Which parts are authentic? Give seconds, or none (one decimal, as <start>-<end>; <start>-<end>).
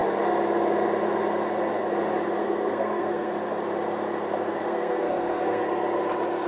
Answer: 0.0-2.4; 3.3-4.5; 5.6-6.5